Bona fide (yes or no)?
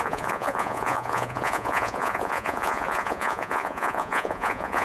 no